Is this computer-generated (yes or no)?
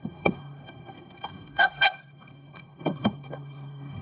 yes